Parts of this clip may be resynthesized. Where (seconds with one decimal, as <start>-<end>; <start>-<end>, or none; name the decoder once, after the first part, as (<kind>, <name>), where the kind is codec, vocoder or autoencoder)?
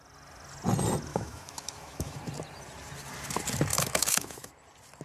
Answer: 1.1-2.2 (autoencoder, DAC-VAE); 3.7-4.5